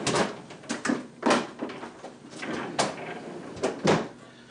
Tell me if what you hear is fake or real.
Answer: real